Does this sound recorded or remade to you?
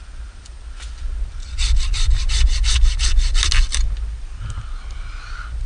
recorded